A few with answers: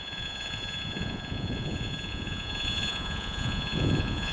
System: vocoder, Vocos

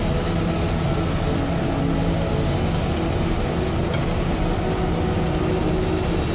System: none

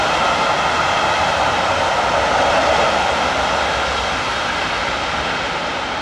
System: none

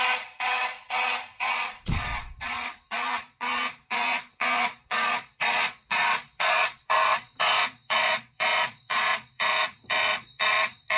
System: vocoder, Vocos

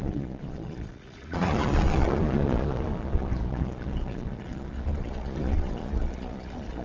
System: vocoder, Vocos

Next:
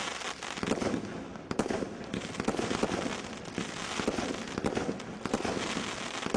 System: none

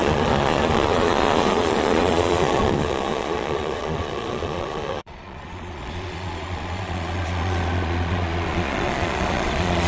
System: vocoder, Vocos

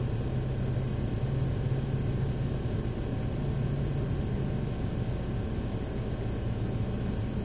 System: none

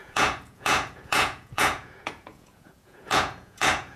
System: vocoder, Vocos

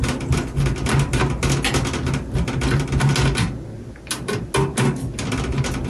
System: none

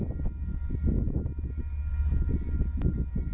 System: none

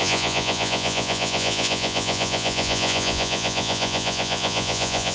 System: vocoder, Vocos